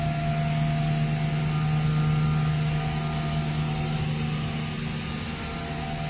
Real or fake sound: real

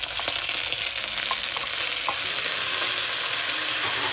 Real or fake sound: real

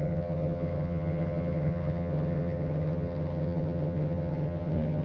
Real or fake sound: fake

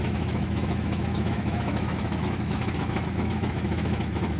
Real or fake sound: fake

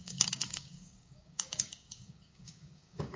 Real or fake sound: fake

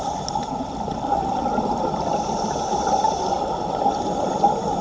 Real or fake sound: real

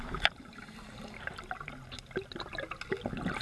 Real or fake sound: real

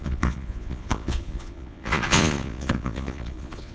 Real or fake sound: fake